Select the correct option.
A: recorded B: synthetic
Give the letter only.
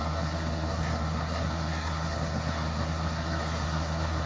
B